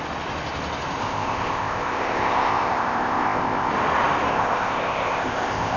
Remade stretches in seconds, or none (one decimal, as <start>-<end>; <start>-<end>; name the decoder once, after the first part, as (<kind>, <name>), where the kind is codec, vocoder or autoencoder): 1.0-3.7 (codec, ZipCodec); 4.3-5.8